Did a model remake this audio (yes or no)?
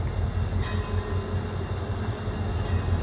no